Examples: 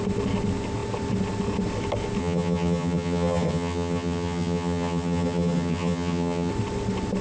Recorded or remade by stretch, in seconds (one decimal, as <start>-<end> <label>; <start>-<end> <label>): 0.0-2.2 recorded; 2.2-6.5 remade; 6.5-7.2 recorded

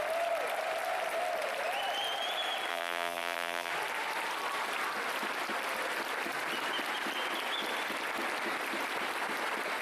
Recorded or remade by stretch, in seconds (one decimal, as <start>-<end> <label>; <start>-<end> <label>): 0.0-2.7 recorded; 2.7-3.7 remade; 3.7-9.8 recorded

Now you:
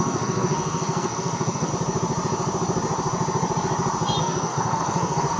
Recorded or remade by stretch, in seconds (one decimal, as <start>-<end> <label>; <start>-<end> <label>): 0.0-1.7 remade; 1.7-4.2 recorded; 4.2-5.4 remade